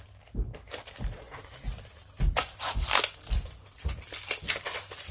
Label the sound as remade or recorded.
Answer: recorded